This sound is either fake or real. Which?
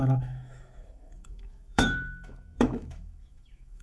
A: fake